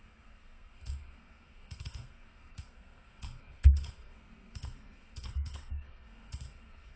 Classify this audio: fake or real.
fake